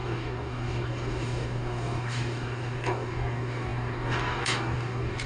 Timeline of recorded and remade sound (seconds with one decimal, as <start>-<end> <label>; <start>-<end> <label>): 0.0-5.3 remade

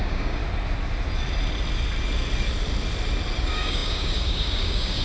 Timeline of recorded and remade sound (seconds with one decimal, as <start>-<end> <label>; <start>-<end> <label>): 0.0-0.4 remade; 0.4-3.4 recorded; 3.4-5.0 remade

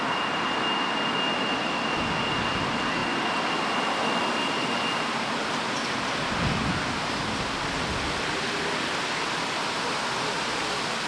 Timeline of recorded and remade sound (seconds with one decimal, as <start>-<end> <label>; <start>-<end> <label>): 0.0-11.1 recorded

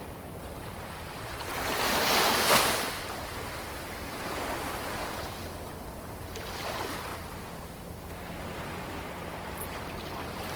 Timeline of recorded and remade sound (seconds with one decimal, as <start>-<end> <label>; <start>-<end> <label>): 0.0-5.5 remade; 5.5-6.1 recorded; 6.1-10.6 remade